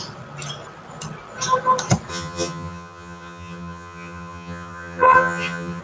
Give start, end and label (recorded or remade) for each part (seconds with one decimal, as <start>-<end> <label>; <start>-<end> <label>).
0.0-2.1 recorded; 2.1-5.8 remade